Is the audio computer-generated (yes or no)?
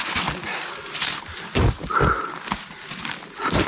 no